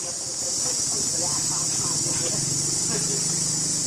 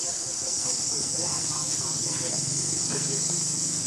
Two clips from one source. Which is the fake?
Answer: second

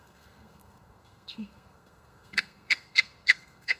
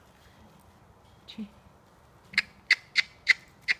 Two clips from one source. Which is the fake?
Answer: first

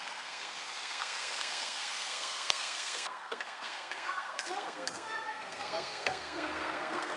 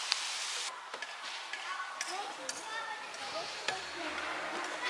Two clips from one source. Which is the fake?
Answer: first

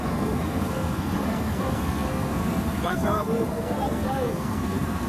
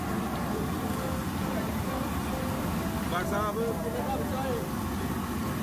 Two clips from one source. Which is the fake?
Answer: first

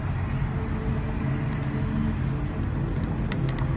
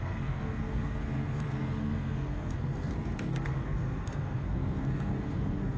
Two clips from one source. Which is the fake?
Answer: second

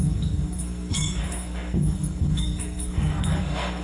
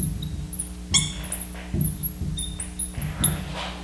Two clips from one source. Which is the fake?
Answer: first